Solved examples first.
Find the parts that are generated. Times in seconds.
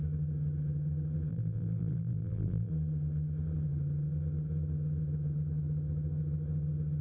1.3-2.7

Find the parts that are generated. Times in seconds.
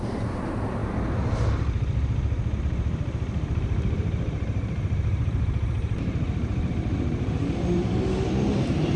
0.0-0.8; 2.6-9.0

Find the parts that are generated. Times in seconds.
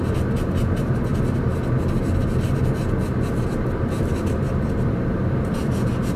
0.0-1.1; 3.9-6.2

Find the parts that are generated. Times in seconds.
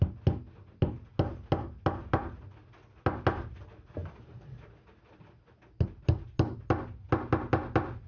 none